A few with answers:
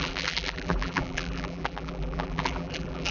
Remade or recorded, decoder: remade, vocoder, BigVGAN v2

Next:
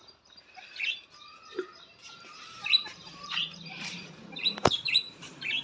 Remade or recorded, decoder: remade, vocoder, BigVGAN v2